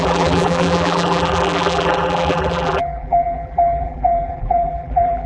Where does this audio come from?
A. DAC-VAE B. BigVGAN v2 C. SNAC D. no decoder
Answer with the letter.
B